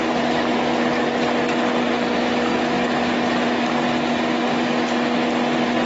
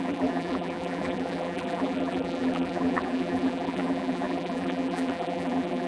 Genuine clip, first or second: first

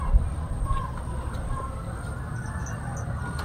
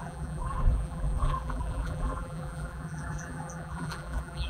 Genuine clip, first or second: first